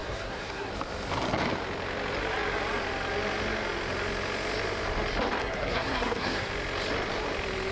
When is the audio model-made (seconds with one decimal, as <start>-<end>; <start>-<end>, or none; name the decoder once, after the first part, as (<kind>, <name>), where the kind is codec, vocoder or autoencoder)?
0.0-0.7 (codec, SNAC); 5.4-6.5